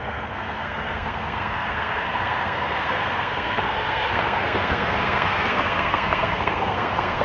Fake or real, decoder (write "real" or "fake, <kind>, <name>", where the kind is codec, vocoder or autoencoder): fake, codec, SNAC